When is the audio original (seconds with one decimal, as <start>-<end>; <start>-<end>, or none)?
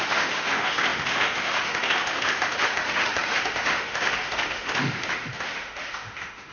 none